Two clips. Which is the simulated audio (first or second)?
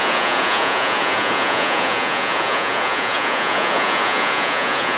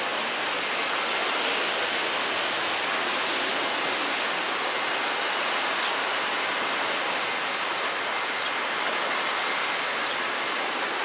first